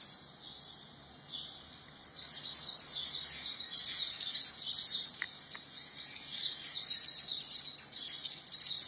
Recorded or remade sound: recorded